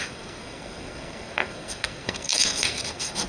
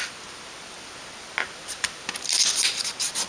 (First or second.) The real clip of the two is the second